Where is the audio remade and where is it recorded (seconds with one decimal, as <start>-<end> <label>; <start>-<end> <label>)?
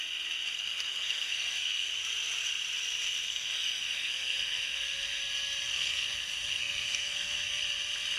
0.0-0.5 recorded; 0.5-1.9 remade; 1.9-3.3 recorded; 3.3-5.2 remade; 5.2-5.7 recorded; 5.7-7.6 remade; 7.6-8.2 recorded